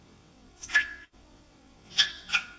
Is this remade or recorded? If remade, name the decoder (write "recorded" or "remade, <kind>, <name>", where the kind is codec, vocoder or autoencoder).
remade, vocoder, WaveNeXt